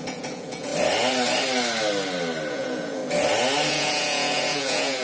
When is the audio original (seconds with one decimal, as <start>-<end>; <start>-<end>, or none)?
0.7-2.5; 3.0-3.7